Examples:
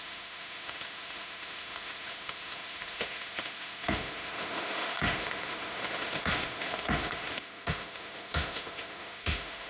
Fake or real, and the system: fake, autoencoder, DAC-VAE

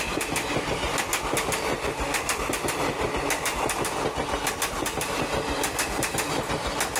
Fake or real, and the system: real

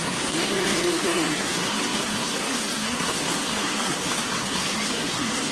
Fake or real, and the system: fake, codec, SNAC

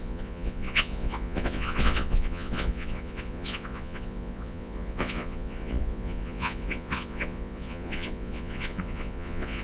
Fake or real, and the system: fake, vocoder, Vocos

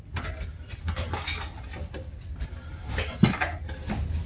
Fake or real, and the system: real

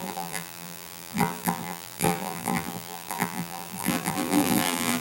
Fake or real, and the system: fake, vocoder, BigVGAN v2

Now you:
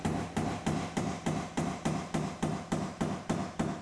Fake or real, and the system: fake, vocoder, BigVGAN v2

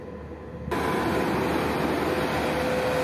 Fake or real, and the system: real